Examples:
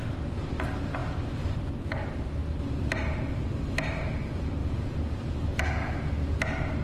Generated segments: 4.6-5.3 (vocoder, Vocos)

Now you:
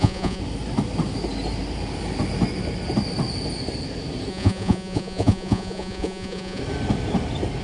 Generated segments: 0.0-0.4 (vocoder, Vocos); 4.3-6.6

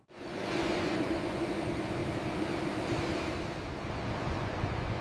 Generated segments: 0.0-2.0 (vocoder, Vocos); 3.9-5.0

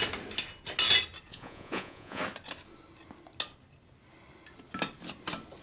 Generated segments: 1.3-2.2 (vocoder, Vocos)